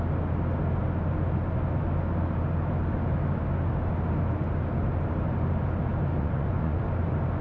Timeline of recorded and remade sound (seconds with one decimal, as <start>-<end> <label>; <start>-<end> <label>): 0.0-6.2 recorded; 6.2-6.8 remade; 6.8-7.4 recorded